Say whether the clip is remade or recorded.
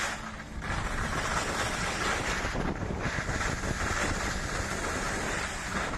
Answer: recorded